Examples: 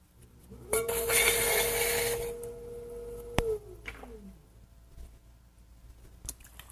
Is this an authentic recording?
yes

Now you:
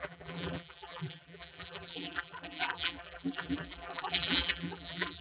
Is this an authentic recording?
no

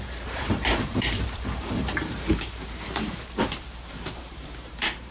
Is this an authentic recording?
no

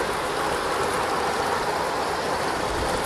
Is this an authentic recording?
yes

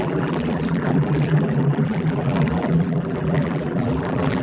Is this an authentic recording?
no